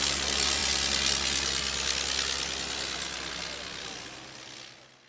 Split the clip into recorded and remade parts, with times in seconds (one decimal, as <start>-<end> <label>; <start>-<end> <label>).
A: 0.0-5.1 recorded